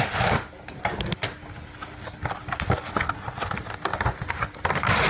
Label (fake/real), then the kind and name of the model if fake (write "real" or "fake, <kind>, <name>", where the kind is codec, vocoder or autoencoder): real